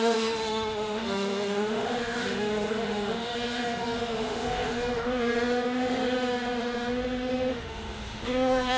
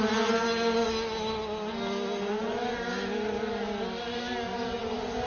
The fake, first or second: first